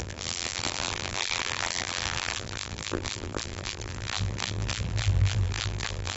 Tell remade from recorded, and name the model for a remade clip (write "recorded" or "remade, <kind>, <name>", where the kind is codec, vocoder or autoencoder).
remade, vocoder, BigVGAN v2